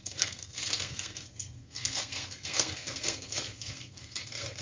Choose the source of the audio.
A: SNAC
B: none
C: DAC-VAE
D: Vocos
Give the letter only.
A